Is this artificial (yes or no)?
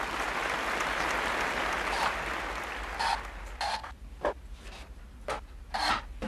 no